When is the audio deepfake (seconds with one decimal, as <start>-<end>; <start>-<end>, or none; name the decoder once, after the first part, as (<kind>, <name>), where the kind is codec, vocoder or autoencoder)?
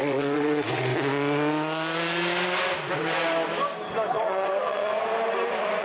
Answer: 0.0-0.9 (vocoder, WaveNeXt); 4.1-4.9